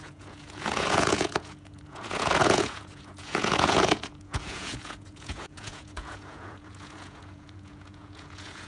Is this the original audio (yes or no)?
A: no